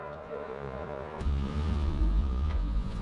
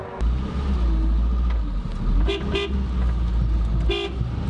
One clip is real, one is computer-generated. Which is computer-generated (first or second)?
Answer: first